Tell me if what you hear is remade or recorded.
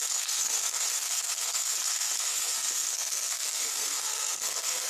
remade